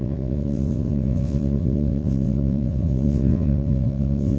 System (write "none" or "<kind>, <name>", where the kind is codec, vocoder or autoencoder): vocoder, WaveNeXt